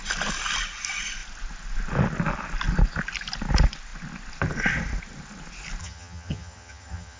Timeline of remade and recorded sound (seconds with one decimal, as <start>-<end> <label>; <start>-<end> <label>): 0.0-5.8 recorded; 5.8-7.2 remade